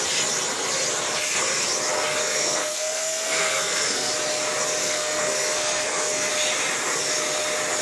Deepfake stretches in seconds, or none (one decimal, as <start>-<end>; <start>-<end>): 2.2-4.1; 4.8-6.3